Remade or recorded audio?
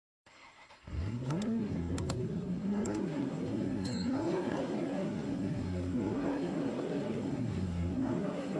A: remade